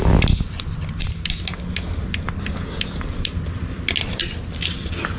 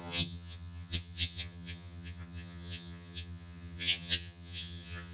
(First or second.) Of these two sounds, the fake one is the second